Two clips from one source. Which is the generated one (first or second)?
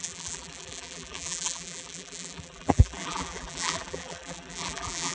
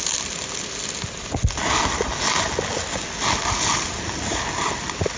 first